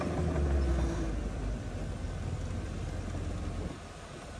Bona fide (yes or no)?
yes